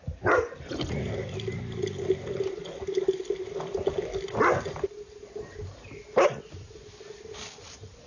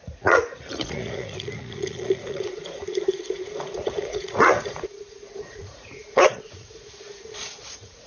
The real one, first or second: first